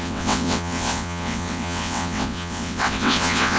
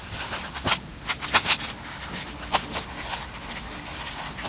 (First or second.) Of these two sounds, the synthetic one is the first